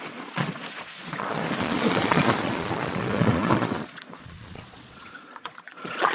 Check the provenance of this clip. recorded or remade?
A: remade